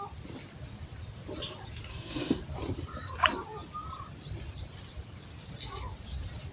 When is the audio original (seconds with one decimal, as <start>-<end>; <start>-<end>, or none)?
0.0-1.9; 2.4-6.5